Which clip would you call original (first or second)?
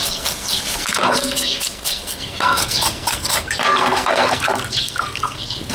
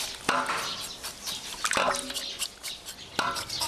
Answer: second